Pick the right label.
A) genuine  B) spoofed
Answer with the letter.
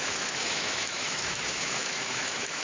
B